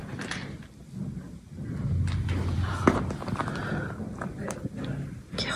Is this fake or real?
real